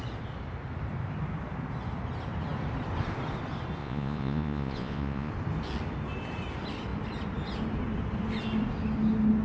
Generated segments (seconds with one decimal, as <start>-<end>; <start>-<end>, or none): 3.8-5.3